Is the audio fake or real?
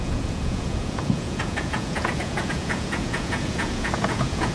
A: fake